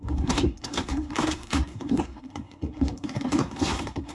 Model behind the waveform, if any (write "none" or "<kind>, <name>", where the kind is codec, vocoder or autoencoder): codec, SNAC